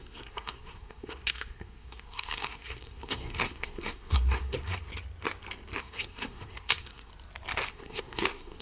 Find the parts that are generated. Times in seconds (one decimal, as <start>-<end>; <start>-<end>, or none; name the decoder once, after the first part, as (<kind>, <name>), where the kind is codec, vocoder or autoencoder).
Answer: 0.0-4.9 (codec, SNAC); 5.8-7.1; 7.7-8.6